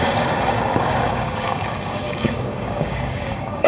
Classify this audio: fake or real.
fake